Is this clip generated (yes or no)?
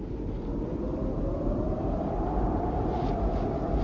no